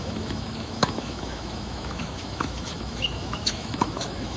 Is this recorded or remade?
remade